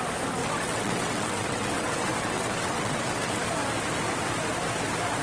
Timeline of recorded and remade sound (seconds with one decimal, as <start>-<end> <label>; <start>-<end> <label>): 0.0-0.4 recorded; 0.4-3.4 remade; 3.4-5.2 recorded